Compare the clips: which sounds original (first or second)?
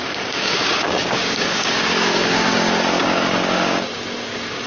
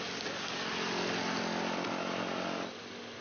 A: second